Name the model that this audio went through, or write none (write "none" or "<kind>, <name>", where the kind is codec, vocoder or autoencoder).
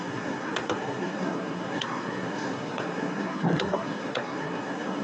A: codec, SNAC